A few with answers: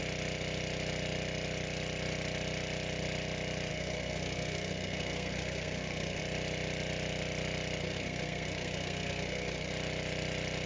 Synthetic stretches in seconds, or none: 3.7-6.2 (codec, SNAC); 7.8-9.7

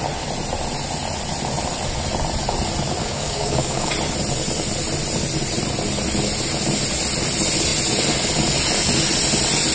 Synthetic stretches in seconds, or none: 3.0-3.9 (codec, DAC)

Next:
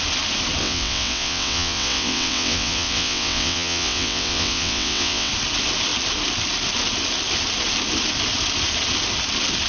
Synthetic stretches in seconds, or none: 0.6-5.3 (vocoder, WaveNeXt)

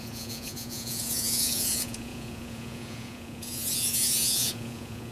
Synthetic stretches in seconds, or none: 0.0-5.1 (vocoder, Vocos)

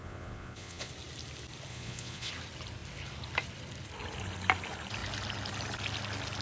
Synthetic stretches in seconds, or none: 0.0-0.9 (vocoder, Vocos); 1.7-2.3

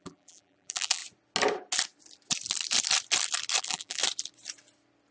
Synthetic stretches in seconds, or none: 0.0-1.0 (vocoder, BigVGAN v2); 3.6-4.0

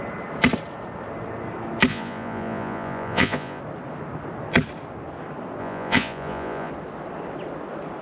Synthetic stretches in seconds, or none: 1.9-3.6 (vocoder, Vocos); 5.6-6.7

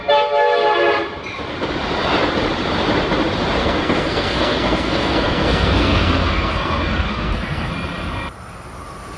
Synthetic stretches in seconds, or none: 3.6-7.7 (codec, SNAC)